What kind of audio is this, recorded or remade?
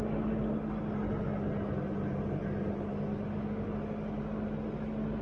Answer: recorded